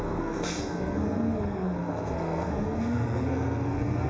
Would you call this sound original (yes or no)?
no